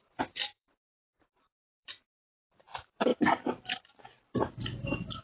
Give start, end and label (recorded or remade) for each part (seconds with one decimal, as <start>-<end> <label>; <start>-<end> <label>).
0.0-3.1 remade; 3.1-5.2 recorded